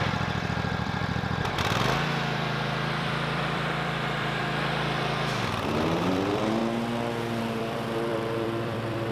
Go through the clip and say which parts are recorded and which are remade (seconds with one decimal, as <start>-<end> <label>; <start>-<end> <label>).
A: 0.0-6.6 remade; 6.6-7.4 recorded; 7.4-9.1 remade